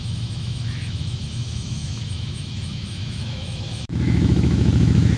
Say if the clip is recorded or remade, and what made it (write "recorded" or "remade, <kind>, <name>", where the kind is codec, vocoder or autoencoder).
remade, autoencoder, DAC-VAE